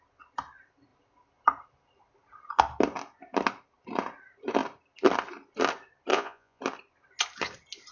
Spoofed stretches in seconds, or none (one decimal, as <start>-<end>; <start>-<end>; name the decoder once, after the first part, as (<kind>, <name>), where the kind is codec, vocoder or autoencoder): 6.1-6.6 (vocoder, Vocos)